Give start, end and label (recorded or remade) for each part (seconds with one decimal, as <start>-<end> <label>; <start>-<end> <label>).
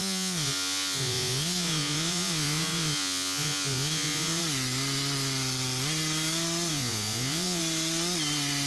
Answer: 0.0-4.4 remade; 4.4-6.7 recorded; 6.7-7.6 remade; 7.6-8.7 recorded